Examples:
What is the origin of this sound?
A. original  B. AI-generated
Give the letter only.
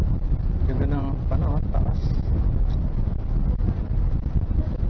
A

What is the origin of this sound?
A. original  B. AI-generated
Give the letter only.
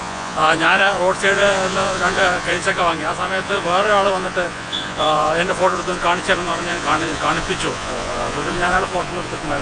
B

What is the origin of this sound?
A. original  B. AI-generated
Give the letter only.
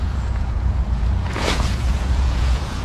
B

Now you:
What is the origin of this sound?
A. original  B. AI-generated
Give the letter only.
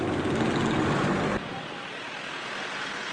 A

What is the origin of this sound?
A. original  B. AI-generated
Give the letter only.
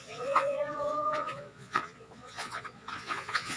B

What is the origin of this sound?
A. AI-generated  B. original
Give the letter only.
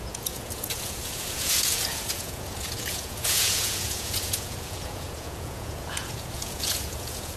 A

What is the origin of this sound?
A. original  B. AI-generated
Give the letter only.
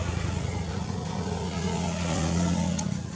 B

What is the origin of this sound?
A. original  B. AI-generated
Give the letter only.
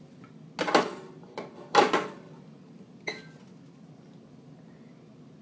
A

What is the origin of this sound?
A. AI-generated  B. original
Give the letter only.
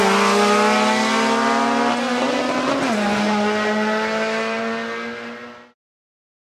B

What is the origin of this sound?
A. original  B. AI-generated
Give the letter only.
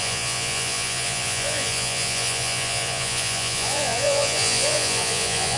B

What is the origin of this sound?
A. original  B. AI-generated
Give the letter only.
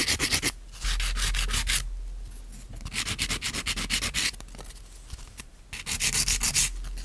A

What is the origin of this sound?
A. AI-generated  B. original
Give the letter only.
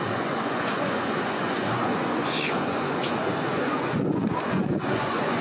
A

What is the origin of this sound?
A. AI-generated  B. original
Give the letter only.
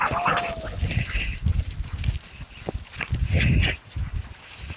B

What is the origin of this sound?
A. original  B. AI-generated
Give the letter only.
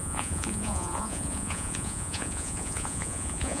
B